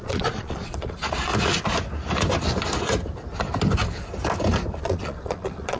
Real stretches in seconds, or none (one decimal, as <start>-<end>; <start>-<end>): 1.3-4.8